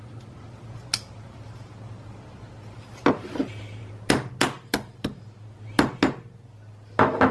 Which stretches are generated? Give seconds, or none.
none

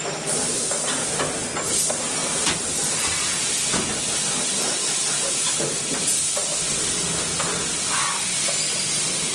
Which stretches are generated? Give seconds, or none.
none

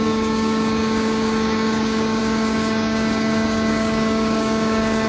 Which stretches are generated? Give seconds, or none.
0.0-5.1 (codec, DAC)

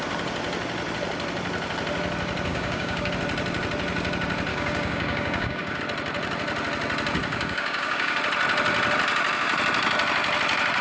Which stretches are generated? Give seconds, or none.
2.5-3.1 (codec, DAC); 4.5-5.8; 7.3-8.2

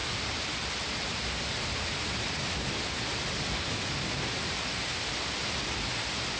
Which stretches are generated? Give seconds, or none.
none

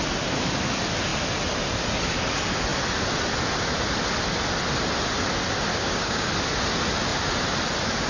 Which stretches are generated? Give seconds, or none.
5.7-6.3 (codec, DAC)